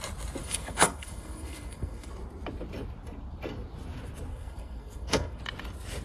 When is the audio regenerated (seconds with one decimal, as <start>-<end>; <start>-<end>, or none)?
0.4-2.1; 4.3-5.4